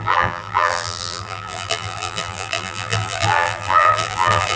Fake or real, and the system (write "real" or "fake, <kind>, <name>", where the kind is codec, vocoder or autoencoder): fake, vocoder, BigVGAN v2